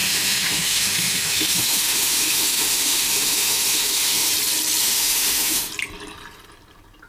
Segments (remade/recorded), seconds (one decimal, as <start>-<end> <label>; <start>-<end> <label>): 0.0-4.3 remade; 4.3-4.8 recorded; 4.8-5.7 remade; 5.7-7.1 recorded